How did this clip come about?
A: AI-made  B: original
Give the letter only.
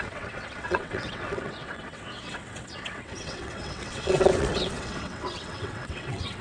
A